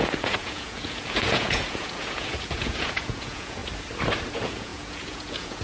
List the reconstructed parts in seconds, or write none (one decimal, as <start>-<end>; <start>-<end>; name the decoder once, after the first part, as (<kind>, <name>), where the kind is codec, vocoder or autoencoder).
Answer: 0.0-3.6 (vocoder, Vocos); 4.3-5.6